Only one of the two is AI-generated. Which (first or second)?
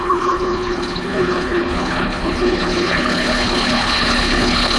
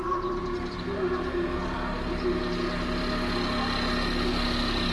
first